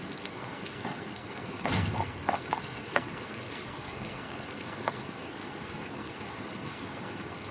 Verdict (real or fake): fake